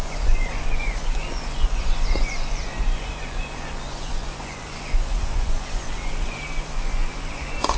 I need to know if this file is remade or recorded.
remade